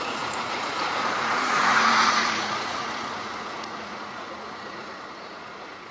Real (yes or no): no